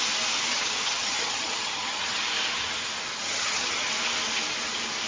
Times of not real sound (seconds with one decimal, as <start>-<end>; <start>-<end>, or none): 0.5-2.2; 3.1-3.9